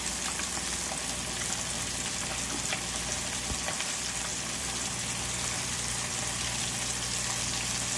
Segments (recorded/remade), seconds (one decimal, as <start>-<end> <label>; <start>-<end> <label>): 0.0-4.3 recorded; 4.3-6.6 remade; 6.6-8.0 recorded

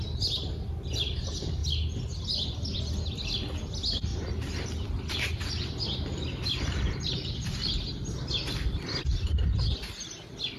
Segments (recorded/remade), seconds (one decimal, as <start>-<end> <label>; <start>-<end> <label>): 0.0-4.1 recorded; 4.1-7.7 remade; 7.7-10.6 recorded

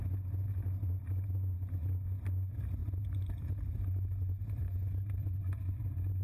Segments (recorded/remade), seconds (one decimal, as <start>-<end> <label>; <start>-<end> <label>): 0.0-2.8 recorded; 2.8-5.7 remade; 5.7-6.2 recorded

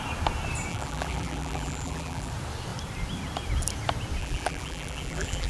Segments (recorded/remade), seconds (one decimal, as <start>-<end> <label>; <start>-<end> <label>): 0.0-0.7 recorded; 0.7-2.3 remade; 2.3-4.2 recorded; 4.2-5.5 remade

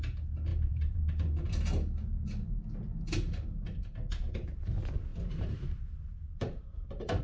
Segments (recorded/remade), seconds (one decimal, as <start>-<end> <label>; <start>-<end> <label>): 0.0-0.5 recorded; 0.5-1.0 remade; 1.0-5.1 recorded; 5.1-7.2 remade